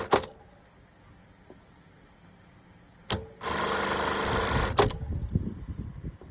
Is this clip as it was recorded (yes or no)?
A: yes